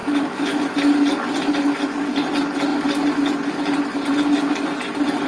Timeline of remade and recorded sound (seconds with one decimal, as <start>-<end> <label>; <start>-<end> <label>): 0.0-0.6 remade; 0.6-5.3 recorded